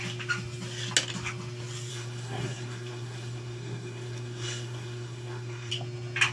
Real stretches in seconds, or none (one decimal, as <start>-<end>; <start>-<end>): 0.0-1.9; 5.7-6.3